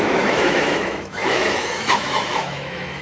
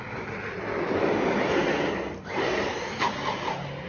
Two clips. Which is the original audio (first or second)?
second